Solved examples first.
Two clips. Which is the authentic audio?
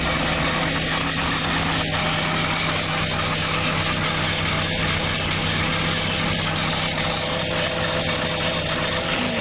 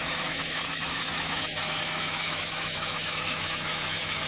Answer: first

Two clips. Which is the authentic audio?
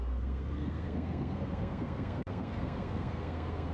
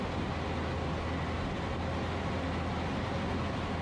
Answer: second